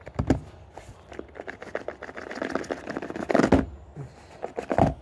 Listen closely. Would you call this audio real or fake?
real